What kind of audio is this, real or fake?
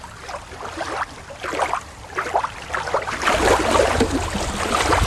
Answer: real